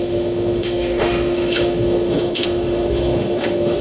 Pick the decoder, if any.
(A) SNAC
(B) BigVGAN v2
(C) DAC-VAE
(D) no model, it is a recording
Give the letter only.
C